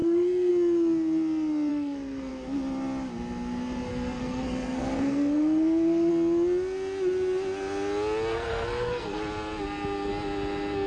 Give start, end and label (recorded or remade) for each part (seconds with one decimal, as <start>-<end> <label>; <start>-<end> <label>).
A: 0.0-0.5 remade; 0.5-1.7 recorded; 1.7-2.3 remade; 2.3-3.9 recorded; 3.9-6.1 remade; 6.1-8.3 recorded; 8.3-9.2 remade; 9.2-10.9 recorded